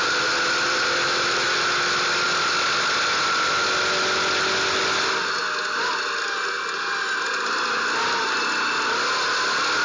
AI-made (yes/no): no